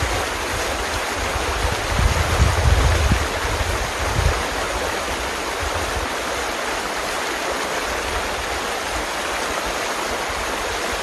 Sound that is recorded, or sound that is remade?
recorded